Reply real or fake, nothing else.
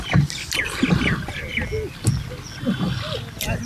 real